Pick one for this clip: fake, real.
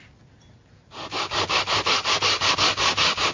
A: real